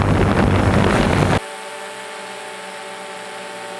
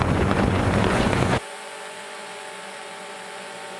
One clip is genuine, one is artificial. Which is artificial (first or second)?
second